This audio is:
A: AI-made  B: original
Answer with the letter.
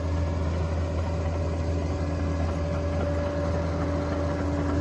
B